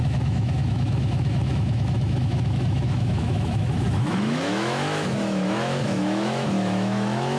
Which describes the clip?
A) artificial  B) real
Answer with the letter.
A